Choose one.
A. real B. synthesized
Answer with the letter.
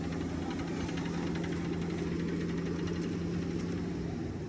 A